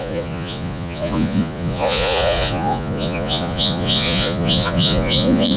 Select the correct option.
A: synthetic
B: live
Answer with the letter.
A